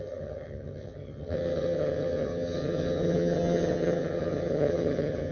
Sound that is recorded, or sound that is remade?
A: remade